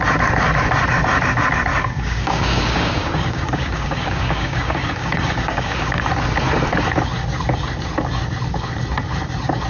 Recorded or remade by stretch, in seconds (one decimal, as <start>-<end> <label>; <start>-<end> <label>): 0.0-1.7 recorded; 1.7-6.0 remade; 6.0-9.7 recorded